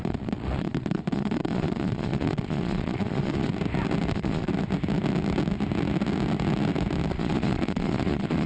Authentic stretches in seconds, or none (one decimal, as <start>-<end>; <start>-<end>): 3.5-4.1; 4.5-7.1